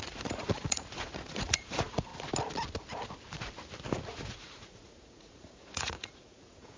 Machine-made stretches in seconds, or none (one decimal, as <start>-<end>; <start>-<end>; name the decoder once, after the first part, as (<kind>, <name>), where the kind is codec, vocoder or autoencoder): 0.0-2.1 (vocoder, Vocos); 4.2-6.8